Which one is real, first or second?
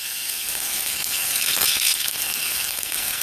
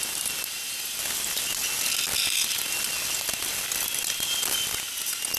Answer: second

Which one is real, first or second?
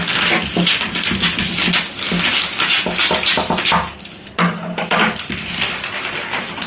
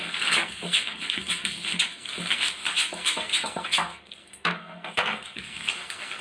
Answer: first